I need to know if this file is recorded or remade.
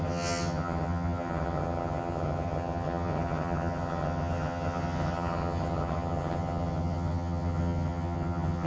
remade